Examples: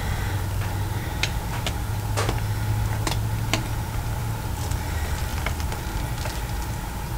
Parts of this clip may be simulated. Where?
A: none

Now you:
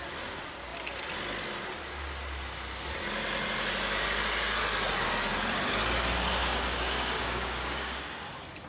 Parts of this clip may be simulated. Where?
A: 6.4-8.0 (codec, DAC)

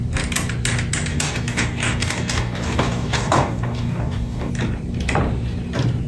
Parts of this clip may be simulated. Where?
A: 1.1-4.5 (codec, DAC)